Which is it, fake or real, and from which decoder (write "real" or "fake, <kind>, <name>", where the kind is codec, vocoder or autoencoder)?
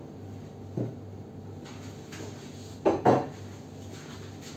real